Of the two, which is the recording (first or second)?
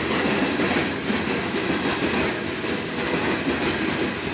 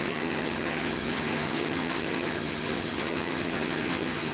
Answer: first